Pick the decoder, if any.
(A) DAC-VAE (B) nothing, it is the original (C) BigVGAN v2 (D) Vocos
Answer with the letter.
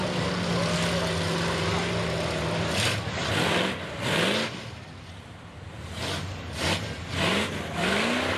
B